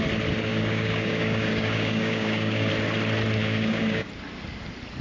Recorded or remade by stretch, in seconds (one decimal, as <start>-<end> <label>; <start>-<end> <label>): 0.0-0.5 recorded; 0.5-2.7 remade; 2.7-3.4 recorded; 3.4-4.1 remade; 4.1-5.0 recorded